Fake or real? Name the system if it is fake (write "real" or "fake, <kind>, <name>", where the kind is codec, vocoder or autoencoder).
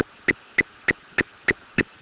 real